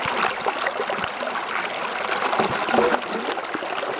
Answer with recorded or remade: recorded